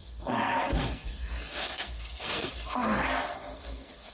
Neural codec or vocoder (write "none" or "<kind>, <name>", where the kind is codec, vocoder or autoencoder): codec, SNAC